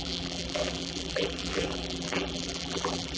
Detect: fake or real fake